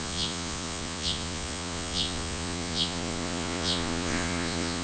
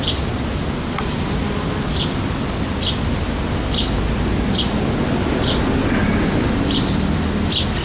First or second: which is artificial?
first